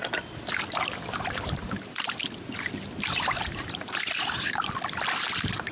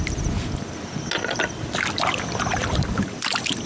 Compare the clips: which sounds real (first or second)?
second